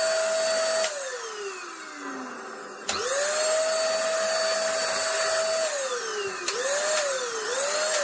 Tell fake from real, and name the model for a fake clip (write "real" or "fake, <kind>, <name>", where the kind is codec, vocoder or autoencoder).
real